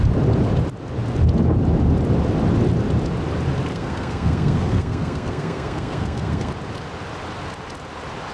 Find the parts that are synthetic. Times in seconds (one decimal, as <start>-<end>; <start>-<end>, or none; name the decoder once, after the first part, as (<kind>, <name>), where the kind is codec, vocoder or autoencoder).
3.7-6.5 (codec, SNAC)